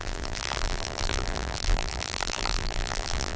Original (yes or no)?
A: no